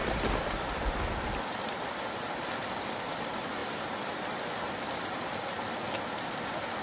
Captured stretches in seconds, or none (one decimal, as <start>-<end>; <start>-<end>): 3.6-4.7